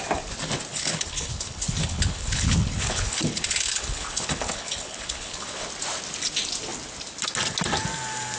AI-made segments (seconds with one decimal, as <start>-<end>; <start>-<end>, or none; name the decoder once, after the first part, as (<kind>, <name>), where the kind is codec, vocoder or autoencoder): 0.7-5.7 (codec, HILCodec)